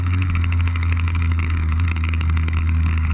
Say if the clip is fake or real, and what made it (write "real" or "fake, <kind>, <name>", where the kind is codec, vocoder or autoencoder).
fake, codec, DAC